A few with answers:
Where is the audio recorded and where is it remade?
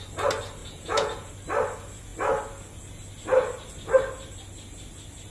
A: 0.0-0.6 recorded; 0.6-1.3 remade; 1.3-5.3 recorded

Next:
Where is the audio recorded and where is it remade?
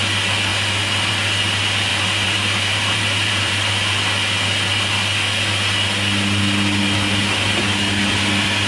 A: 0.0-1.9 recorded; 1.9-3.7 remade; 3.7-8.7 recorded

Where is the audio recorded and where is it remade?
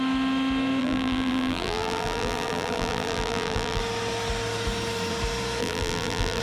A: 0.0-0.8 recorded; 0.8-3.8 remade; 3.8-5.6 recorded; 5.6-6.4 remade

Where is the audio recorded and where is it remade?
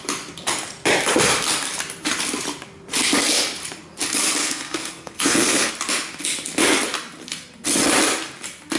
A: 0.0-4.4 recorded; 4.4-5.7 remade; 5.7-8.8 recorded